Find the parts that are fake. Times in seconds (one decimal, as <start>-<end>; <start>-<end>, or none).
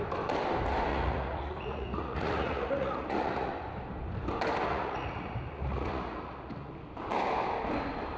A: 0.9-3.5; 4.7-6.7